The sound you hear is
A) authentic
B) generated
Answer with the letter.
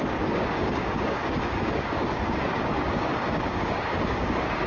B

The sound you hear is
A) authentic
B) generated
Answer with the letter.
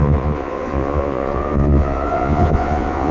B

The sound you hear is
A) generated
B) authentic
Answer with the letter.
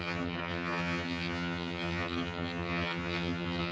A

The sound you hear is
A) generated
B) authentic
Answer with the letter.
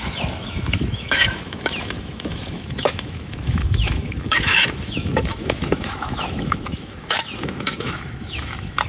A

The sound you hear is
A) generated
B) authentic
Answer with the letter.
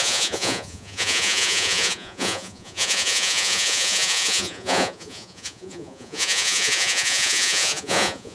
A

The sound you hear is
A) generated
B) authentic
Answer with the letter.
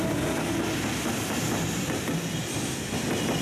B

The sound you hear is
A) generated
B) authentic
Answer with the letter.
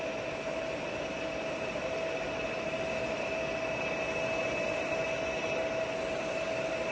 B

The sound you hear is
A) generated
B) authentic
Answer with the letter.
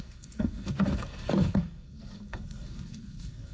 A